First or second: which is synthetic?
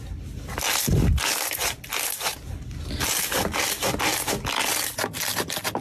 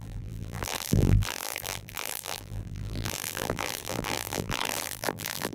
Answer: second